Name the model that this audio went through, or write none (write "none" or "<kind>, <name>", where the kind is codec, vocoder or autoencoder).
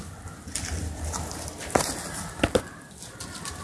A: none